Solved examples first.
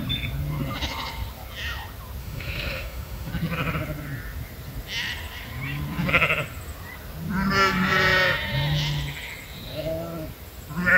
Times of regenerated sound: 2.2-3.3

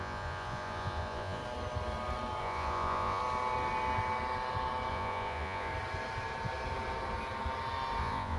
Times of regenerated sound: 0.0-1.4; 2.4-3.2; 4.9-5.7; 8.0-8.4

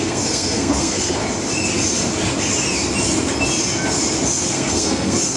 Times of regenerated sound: 0.0-1.2; 4.4-5.4